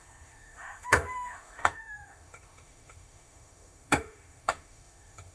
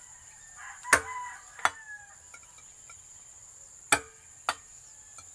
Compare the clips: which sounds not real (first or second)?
first